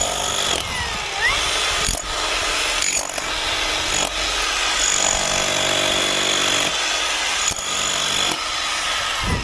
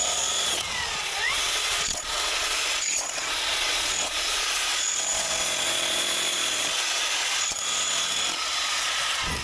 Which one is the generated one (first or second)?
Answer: second